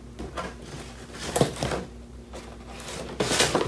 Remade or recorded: recorded